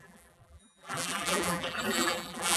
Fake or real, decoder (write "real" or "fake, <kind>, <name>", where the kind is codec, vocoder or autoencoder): fake, vocoder, BigVGAN v2